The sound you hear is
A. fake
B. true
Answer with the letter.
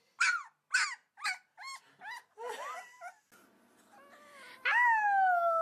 B